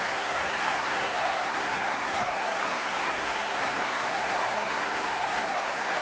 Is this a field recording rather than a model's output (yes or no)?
no